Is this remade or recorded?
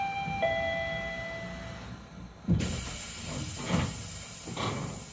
recorded